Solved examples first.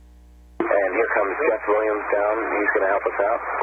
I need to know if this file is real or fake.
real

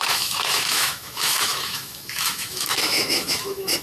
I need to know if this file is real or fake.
fake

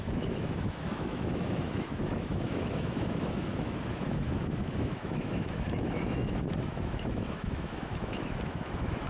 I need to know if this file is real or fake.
fake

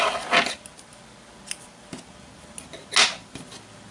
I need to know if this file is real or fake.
real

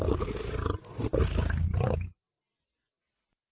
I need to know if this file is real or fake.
real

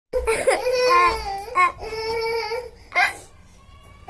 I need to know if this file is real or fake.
real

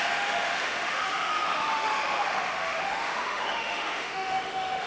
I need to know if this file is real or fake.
fake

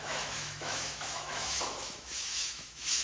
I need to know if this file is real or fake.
fake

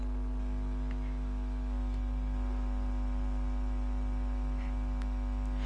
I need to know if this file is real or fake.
real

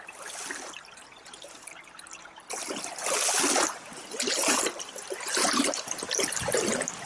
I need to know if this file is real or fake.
real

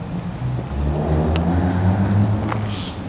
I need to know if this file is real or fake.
real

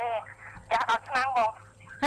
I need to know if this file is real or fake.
real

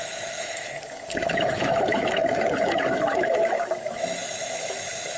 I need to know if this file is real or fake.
fake